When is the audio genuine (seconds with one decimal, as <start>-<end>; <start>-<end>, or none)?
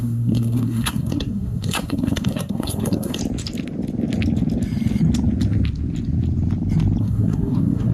3.2-7.0